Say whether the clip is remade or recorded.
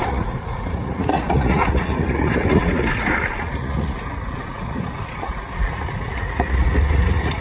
remade